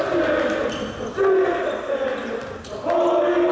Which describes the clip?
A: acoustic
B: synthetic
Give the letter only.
A